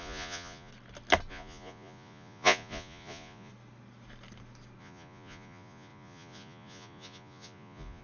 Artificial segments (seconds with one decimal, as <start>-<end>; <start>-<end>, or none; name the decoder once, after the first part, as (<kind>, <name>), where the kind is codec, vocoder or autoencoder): 0.0-0.7 (vocoder, Vocos); 1.3-3.5; 4.8-8.0